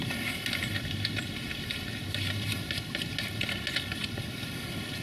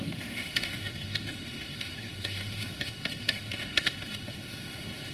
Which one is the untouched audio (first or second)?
first